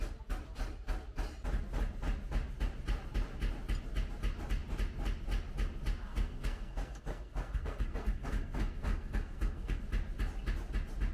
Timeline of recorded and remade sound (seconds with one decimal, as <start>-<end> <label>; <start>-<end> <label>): 0.0-6.1 recorded; 6.1-9.8 remade; 9.8-11.1 recorded